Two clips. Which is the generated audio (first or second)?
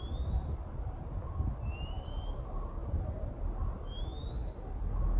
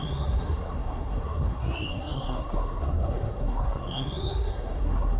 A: second